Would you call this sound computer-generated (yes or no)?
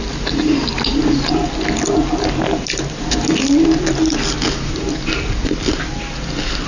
no